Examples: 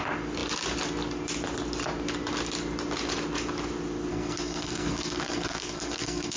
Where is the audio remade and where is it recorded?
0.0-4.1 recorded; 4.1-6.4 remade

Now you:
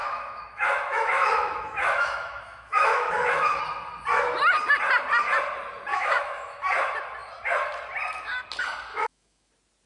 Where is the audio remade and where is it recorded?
0.0-3.6 remade; 3.6-5.9 recorded; 5.9-6.6 remade; 6.6-8.9 recorded; 8.9-9.5 remade; 9.5-9.9 recorded

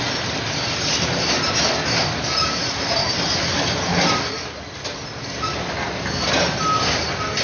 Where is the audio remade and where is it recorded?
0.0-7.4 recorded

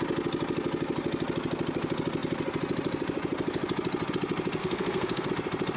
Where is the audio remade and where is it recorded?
0.0-4.6 recorded; 4.6-5.3 remade; 5.3-5.8 recorded

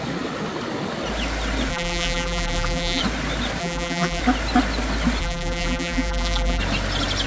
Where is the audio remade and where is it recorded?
0.0-1.7 recorded; 1.7-3.0 remade; 3.0-3.6 recorded; 3.6-4.2 remade; 4.2-5.2 recorded; 5.2-6.6 remade; 6.6-7.3 recorded

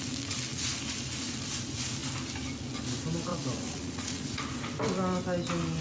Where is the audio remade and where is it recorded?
0.0-3.3 recorded; 3.3-4.4 remade; 4.4-5.8 recorded

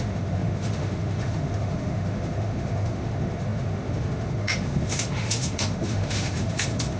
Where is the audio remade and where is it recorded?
0.0-7.0 remade

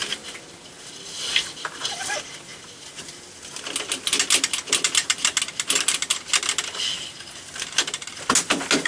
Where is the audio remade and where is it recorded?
0.0-8.9 recorded